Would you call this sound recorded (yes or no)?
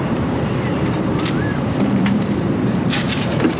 no